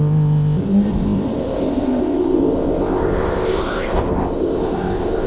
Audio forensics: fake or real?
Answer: fake